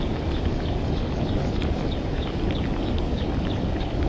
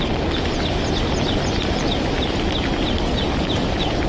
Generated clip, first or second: first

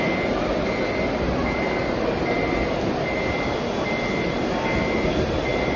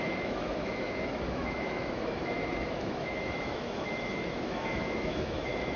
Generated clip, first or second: second